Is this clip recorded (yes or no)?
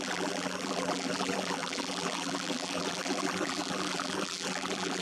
no